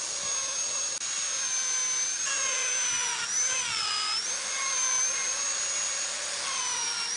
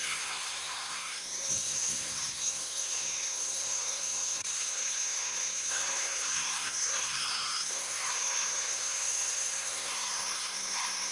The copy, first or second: second